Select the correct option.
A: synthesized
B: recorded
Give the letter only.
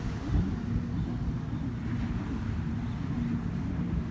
B